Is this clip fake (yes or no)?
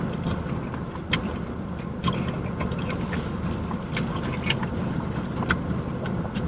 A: no